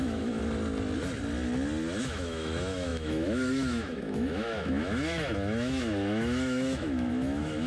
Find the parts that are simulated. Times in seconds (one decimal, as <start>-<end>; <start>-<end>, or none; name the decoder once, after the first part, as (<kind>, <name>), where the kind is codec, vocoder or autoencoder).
0.0-0.4 (autoencoder, DAC-VAE); 2.0-7.7